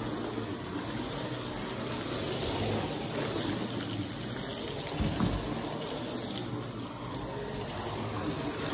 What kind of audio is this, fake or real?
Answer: real